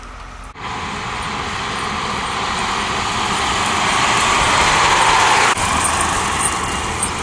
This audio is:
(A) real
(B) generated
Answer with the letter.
A